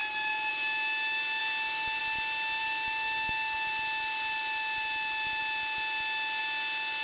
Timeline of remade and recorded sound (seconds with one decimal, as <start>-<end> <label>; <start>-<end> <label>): 0.0-0.5 remade; 0.5-1.4 recorded; 1.4-2.0 remade; 2.0-2.6 recorded; 2.6-3.7 remade; 3.7-7.0 recorded